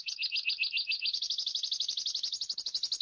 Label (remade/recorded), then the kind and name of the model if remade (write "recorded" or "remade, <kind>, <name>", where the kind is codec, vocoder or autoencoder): recorded